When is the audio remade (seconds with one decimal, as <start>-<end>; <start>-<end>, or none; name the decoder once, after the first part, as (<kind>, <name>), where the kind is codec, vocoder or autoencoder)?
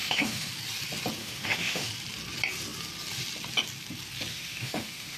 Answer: 0.0-0.5 (autoencoder, DAC-VAE); 1.2-1.9; 4.3-5.2